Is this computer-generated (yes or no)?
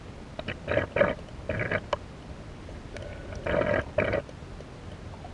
no